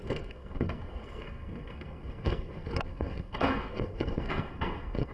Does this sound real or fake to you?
fake